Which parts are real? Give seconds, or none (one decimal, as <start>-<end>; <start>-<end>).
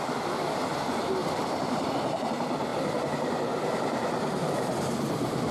0.0-5.5